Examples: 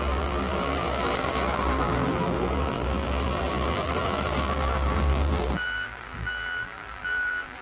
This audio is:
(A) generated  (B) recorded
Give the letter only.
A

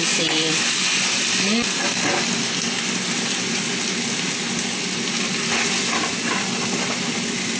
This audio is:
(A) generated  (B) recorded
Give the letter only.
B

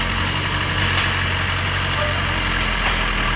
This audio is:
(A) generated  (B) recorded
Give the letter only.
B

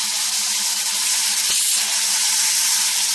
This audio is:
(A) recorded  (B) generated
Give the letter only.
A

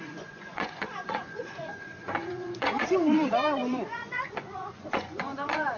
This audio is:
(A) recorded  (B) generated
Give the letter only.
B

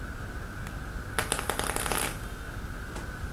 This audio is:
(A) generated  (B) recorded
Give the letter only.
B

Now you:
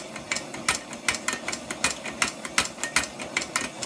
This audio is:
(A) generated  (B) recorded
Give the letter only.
B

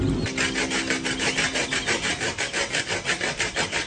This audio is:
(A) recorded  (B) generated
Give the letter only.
A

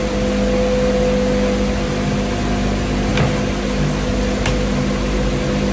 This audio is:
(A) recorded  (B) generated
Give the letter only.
A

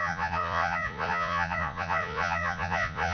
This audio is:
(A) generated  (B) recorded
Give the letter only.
A